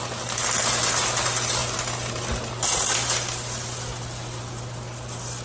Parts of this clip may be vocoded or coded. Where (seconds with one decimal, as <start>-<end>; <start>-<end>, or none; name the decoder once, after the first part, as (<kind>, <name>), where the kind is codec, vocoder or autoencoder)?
none